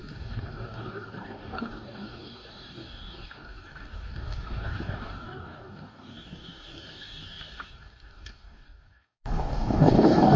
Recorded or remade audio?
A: remade